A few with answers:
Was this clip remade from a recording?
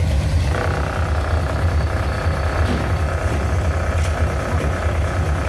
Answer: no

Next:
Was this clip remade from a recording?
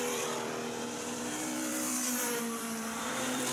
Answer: yes